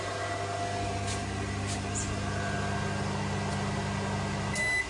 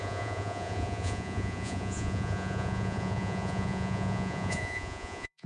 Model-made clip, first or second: second